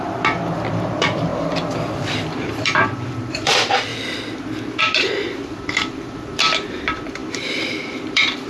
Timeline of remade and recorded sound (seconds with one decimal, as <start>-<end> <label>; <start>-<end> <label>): 0.0-1.3 remade; 1.3-2.5 recorded; 2.5-3.9 remade; 3.9-4.8 recorded; 4.8-8.5 remade